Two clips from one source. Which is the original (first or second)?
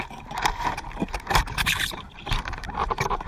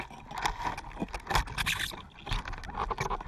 second